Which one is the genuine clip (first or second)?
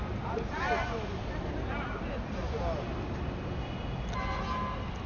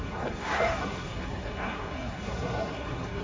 first